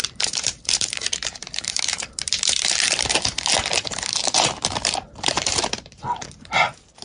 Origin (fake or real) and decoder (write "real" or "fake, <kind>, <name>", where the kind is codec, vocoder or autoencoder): fake, vocoder, BigVGAN v2